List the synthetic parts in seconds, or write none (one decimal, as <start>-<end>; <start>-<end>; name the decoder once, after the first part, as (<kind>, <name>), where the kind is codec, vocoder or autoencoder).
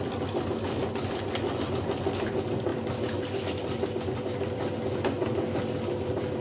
none